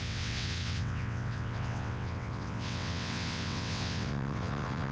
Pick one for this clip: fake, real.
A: fake